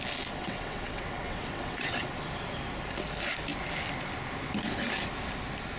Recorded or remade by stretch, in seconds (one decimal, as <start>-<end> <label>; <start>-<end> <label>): 0.0-0.4 recorded; 0.4-2.1 remade; 2.1-5.8 recorded